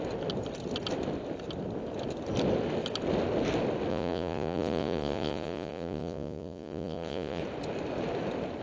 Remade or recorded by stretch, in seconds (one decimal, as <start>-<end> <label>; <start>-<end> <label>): 0.0-3.9 recorded; 3.9-7.4 remade; 7.4-8.6 recorded